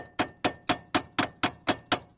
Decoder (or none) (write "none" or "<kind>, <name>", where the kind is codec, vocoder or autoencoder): none